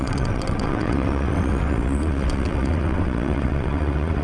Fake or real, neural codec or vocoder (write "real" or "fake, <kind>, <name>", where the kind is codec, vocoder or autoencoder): fake, vocoder, WaveNeXt